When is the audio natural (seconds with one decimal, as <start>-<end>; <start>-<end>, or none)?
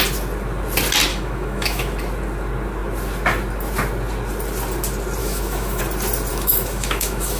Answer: 0.0-1.1; 1.9-5.2; 5.8-6.3